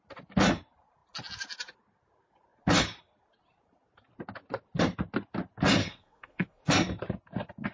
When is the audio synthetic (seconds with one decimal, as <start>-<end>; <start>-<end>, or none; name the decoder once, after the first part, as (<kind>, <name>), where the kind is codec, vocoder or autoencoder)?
5.8-6.7 (codec, SNAC)